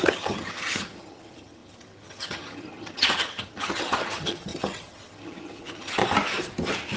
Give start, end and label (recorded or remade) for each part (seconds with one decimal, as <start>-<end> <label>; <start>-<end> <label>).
0.0-6.0 remade; 6.0-7.0 recorded